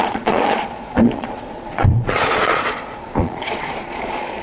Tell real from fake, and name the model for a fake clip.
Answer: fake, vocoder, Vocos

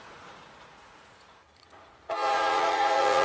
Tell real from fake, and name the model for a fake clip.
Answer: fake, vocoder, Vocos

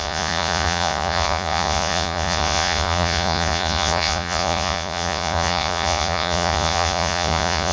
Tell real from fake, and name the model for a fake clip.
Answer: fake, vocoder, Vocos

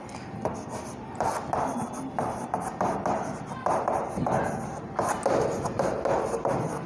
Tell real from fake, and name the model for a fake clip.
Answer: real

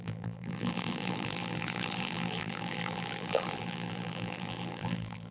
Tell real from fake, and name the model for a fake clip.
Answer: fake, vocoder, BigVGAN v2